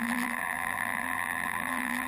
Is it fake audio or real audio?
fake